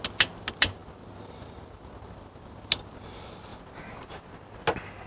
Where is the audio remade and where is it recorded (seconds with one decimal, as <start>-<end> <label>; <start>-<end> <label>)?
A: 0.0-5.1 recorded